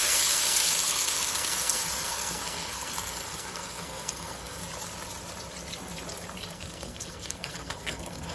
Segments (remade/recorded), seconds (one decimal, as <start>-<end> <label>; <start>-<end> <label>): 0.0-4.6 remade; 4.6-6.5 recorded; 6.5-8.3 remade